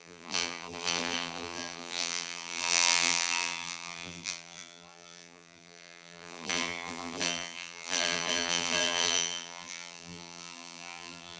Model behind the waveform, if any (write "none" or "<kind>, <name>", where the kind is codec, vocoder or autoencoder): vocoder, BigVGAN v2